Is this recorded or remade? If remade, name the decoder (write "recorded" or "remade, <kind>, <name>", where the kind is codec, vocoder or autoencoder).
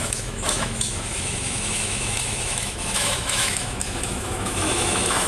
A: remade, autoencoder, DAC-VAE